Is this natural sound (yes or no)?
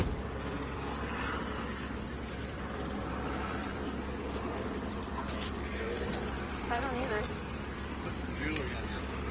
no